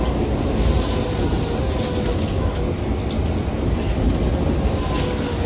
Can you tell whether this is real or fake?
real